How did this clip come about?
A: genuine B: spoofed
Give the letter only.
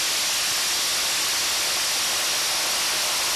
A